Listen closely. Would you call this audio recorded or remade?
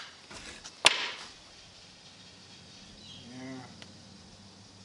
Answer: recorded